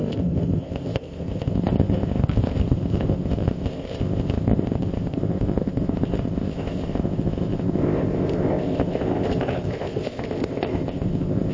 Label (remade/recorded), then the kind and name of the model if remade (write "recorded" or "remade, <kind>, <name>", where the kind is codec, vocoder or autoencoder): remade, codec, ZipCodec